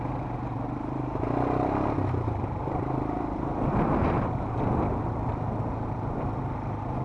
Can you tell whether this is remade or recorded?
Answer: recorded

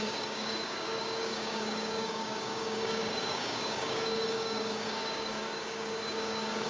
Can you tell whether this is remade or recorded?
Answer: remade